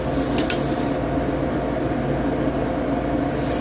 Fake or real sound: real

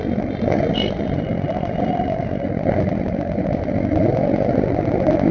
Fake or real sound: fake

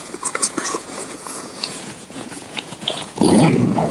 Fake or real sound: fake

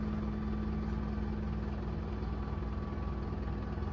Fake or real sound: real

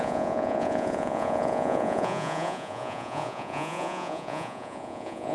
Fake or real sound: fake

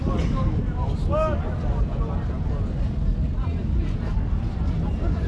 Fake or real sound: real